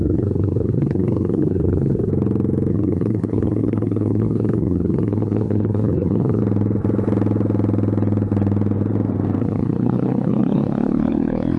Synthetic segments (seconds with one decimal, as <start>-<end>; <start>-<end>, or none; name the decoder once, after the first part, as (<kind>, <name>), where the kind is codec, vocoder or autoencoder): 0.0-2.1 (codec, SNAC); 2.7-6.4; 9.4-11.6